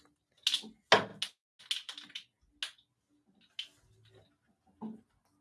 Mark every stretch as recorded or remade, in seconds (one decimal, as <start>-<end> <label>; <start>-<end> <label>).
0.0-5.4 recorded